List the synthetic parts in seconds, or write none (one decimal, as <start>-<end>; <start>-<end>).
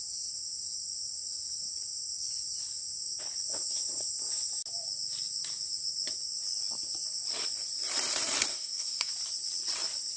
8.5-9.1